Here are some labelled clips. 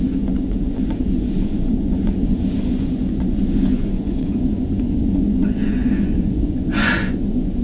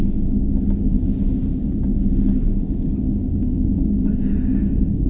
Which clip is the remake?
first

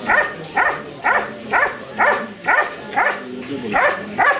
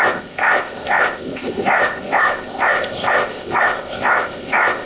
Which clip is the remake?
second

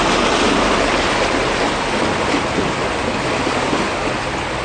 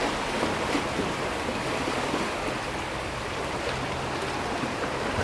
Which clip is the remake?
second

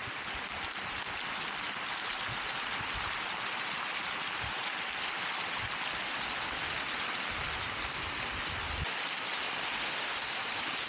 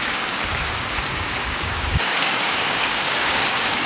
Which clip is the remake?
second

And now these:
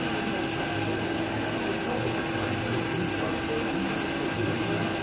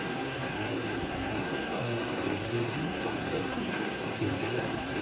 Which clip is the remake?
second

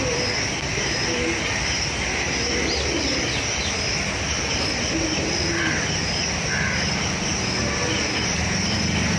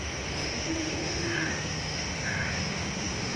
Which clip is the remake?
second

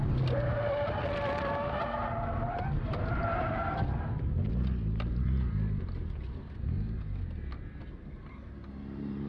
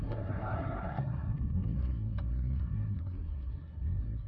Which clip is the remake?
second